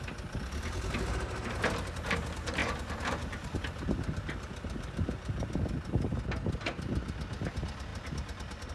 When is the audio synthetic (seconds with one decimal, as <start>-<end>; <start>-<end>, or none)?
2.6-5.5